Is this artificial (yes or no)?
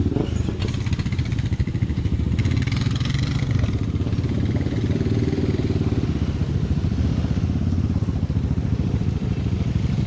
yes